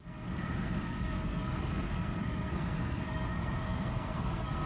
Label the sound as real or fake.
fake